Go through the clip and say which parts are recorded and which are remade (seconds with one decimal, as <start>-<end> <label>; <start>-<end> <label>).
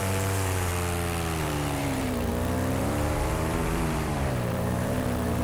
0.0-0.7 remade; 0.7-1.4 recorded; 1.4-2.3 remade; 2.3-2.8 recorded; 2.8-5.4 remade